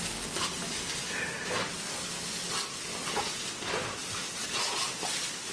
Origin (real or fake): real